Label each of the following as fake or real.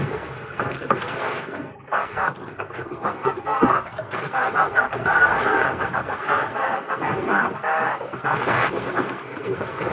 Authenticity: fake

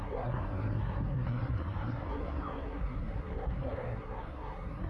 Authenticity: fake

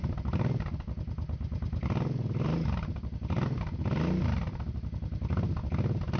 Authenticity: real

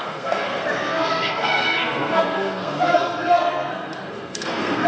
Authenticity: fake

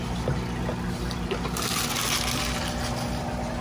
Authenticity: real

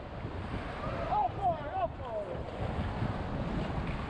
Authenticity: real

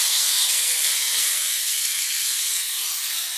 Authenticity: fake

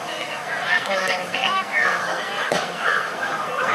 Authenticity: fake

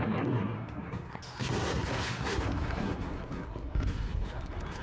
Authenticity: fake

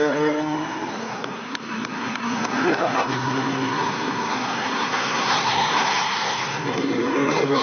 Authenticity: fake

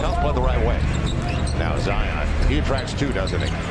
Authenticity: real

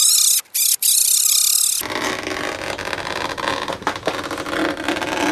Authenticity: real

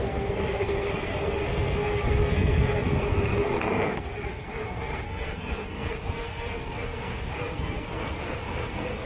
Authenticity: fake